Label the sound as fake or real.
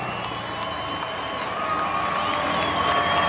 real